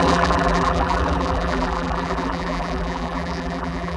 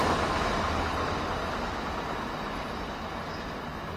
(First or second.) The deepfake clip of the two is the first